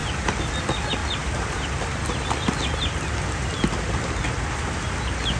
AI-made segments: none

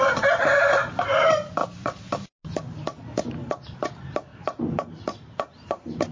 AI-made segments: none

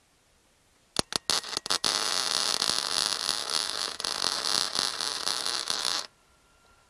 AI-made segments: 3.4-4.0 (autoencoder, DAC-VAE); 5.3-6.1

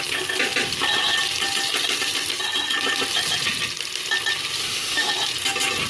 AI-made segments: 4.6-5.1 (autoencoder, DAC-VAE)

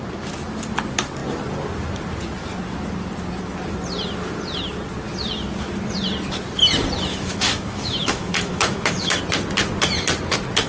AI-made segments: 7.1-9.2 (autoencoder, DAC-VAE)

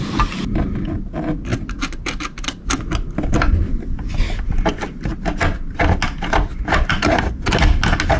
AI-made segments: none

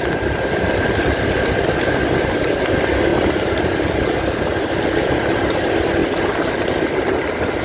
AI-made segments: none